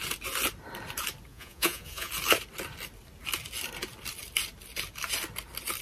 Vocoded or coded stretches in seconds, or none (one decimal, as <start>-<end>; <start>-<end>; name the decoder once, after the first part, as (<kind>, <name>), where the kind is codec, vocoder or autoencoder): 1.3-2.1 (vocoder, Vocos)